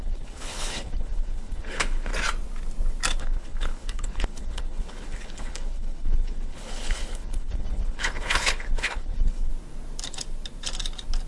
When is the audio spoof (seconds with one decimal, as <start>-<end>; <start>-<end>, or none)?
0.0-2.1; 3.2-9.5